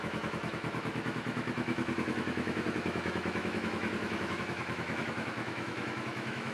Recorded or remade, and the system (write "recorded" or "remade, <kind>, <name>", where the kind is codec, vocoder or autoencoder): remade, autoencoder, DAC-VAE